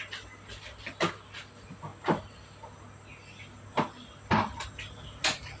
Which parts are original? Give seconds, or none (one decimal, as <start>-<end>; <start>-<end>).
0.0-5.6